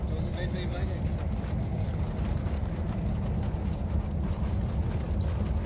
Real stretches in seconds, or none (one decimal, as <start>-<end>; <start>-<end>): 0.0-1.7; 4.6-5.7